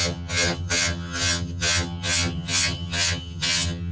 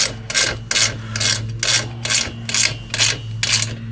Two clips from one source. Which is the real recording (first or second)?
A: second